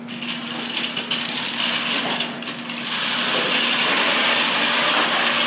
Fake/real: real